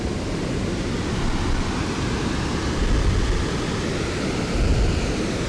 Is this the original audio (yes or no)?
yes